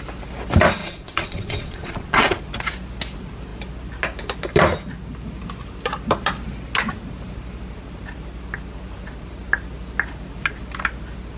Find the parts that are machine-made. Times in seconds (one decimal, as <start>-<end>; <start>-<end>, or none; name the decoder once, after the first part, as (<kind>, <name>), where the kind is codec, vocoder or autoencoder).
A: 0.8-2.4 (vocoder, Vocos)